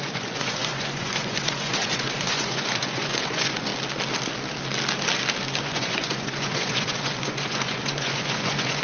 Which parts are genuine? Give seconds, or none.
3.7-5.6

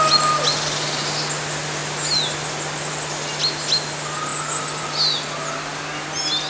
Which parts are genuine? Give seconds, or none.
0.0-6.5

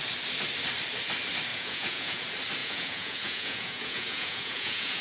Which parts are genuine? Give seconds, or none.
0.0-1.5; 2.2-2.6

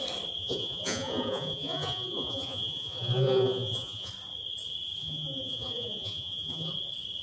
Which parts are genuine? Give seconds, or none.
0.0-0.4; 4.1-5.0; 6.7-7.2

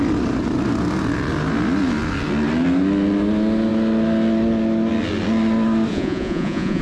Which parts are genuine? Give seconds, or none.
0.0-5.9